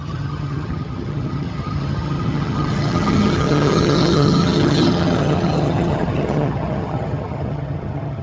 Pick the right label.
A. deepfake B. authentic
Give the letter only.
A